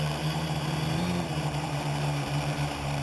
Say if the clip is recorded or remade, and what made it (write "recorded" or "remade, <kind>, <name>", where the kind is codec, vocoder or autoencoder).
remade, vocoder, BigVGAN v2